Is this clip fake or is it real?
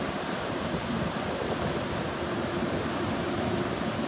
fake